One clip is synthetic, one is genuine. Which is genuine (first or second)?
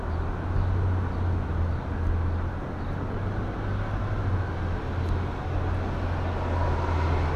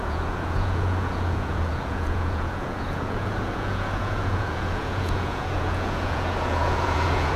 first